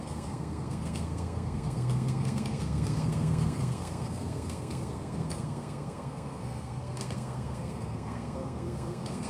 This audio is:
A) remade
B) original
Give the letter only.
A